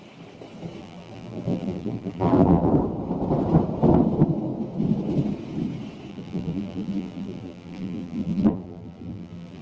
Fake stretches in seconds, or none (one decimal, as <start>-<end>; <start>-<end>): 0.8-2.7; 6.1-9.6